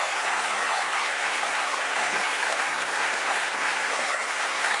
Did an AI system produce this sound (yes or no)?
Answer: yes